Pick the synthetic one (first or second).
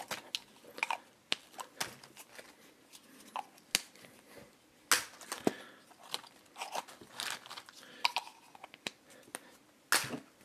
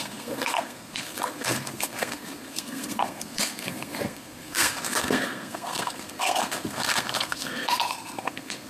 second